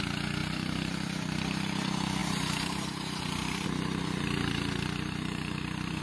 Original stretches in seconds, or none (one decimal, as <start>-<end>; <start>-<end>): 0.0-0.4; 1.4-2.2